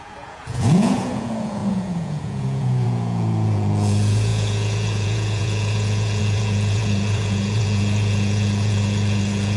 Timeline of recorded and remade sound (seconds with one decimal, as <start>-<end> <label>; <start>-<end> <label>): 0.0-9.6 remade

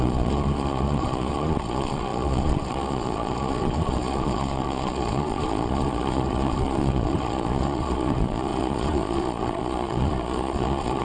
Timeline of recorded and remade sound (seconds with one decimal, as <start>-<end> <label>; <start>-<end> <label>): 0.0-11.0 remade

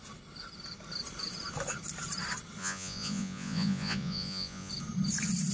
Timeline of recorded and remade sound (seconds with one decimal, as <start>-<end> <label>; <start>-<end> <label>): 0.0-2.6 recorded; 2.6-4.7 remade; 4.7-5.5 recorded

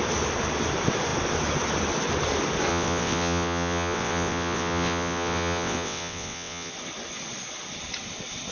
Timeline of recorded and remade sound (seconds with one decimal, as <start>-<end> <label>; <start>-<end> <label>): 0.0-2.7 recorded; 2.7-6.7 remade; 6.7-8.5 recorded

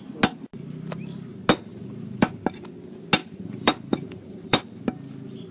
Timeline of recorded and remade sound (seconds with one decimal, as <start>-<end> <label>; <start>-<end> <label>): 0.0-1.7 recorded; 1.7-2.3 remade; 2.3-3.2 recorded; 3.2-4.7 remade; 4.7-5.5 recorded

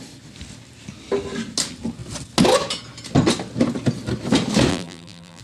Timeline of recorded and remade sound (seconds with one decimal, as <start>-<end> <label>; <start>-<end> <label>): 0.0-4.7 recorded; 4.7-5.4 remade

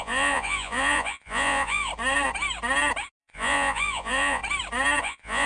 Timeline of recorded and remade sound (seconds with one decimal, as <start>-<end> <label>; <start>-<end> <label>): 0.0-1.9 remade; 1.9-3.2 recorded; 3.2-4.4 remade; 4.4-5.0 recorded; 5.0-5.5 remade

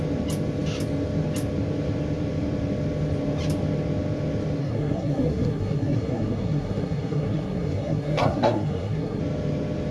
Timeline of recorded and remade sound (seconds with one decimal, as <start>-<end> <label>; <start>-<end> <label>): 0.0-4.6 recorded; 4.6-9.2 remade; 9.2-9.9 recorded